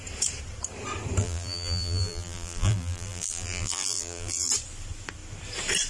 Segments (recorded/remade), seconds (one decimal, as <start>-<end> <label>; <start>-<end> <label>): 0.0-1.2 recorded; 1.2-4.5 remade; 4.5-5.9 recorded